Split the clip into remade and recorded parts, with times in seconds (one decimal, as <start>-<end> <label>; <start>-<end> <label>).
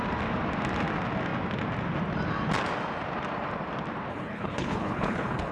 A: 0.0-4.1 recorded; 4.1-5.5 remade